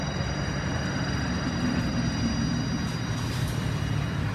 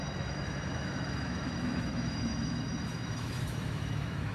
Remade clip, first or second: second